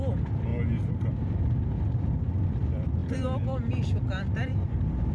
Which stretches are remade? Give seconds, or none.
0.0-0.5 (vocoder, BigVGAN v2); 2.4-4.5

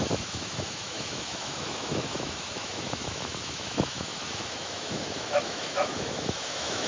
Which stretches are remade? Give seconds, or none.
0.0-6.9 (autoencoder, DAC-VAE)

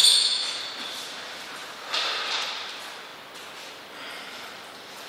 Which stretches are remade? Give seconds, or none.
0.0-0.6 (autoencoder, DAC-VAE)

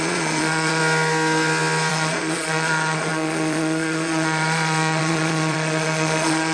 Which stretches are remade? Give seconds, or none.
0.0-0.8 (vocoder, Vocos); 1.9-6.5

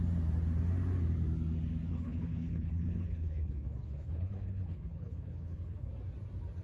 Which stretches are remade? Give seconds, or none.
1.9-5.9 (codec, HILCodec)

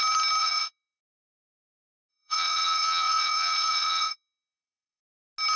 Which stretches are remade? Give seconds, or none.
0.4-1.0 (vocoder, WaveNeXt); 2.1-5.0